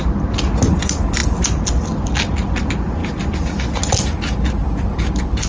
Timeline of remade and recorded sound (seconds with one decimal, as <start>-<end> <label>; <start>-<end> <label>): 0.0-5.5 recorded